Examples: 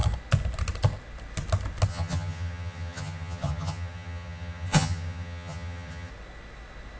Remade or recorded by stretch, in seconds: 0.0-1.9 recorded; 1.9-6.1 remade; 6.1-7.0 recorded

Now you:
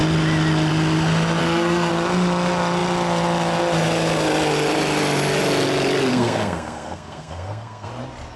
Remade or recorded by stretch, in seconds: 0.0-1.4 recorded; 1.4-1.9 remade; 1.9-6.1 recorded; 6.1-7.9 remade; 7.9-8.4 recorded

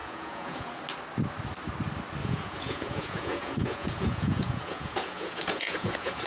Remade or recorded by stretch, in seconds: 0.0-0.8 remade; 0.8-2.2 recorded; 2.2-6.3 remade